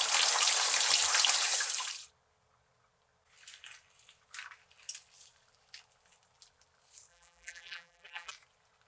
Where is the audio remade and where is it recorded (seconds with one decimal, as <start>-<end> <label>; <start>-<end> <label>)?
0.0-7.1 recorded; 7.1-8.3 remade; 8.3-8.9 recorded